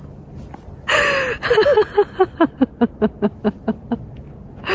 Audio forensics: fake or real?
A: real